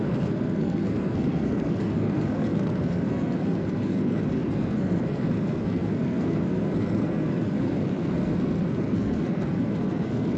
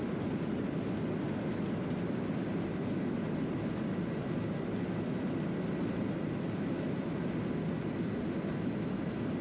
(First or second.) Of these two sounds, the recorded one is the second